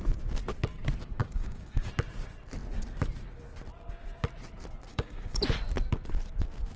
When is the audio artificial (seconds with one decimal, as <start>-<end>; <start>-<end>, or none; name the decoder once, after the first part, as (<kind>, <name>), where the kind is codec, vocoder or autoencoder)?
1.2-1.9 (codec, DAC); 4.9-5.4